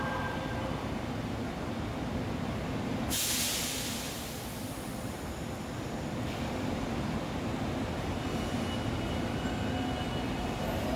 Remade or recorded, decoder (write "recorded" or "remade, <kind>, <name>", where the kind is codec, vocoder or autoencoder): recorded